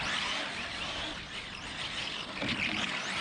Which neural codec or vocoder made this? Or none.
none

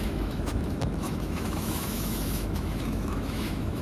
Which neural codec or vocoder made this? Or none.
autoencoder, DAC-VAE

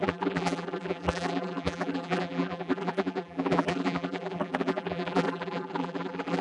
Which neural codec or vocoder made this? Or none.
vocoder, BigVGAN v2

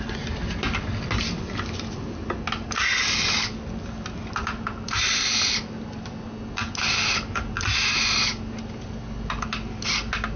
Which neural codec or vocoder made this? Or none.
none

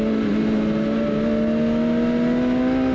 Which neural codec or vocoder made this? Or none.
none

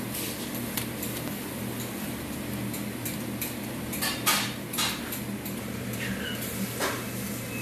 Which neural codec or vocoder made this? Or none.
none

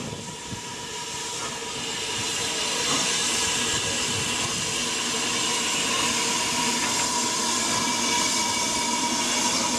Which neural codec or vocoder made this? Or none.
none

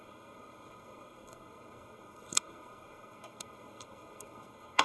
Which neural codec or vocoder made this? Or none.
codec, SNAC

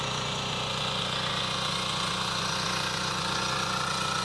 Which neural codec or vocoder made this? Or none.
vocoder, Vocos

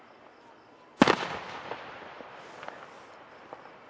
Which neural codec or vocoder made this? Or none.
none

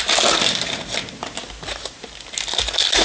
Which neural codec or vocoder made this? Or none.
none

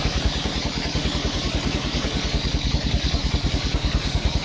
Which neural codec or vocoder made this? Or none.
codec, DAC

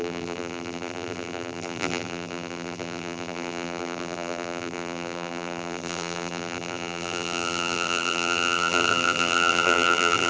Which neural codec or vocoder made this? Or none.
vocoder, BigVGAN v2